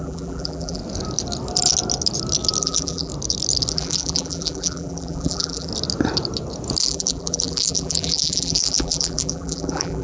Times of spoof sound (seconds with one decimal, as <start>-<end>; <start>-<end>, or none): 0.0-0.8; 2.6-3.1; 3.7-5.7; 6.8-10.0